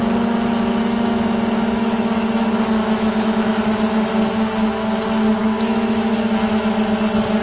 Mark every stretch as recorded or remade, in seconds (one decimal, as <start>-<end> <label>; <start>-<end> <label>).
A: 0.0-0.8 recorded; 0.8-2.3 remade; 2.3-2.8 recorded; 2.8-3.6 remade; 3.6-5.3 recorded; 5.3-6.1 remade; 6.1-7.4 recorded